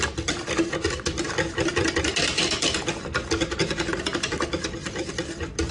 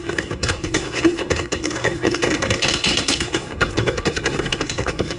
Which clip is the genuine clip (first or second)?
first